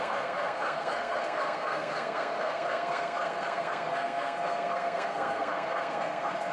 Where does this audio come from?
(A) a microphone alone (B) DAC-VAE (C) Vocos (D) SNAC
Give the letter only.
D